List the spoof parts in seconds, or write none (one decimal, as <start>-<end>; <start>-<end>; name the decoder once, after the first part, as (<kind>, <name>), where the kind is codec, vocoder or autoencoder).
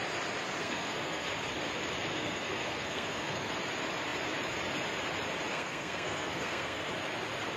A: 0.6-1.3 (codec, SNAC); 2.1-3.5; 5.5-6.9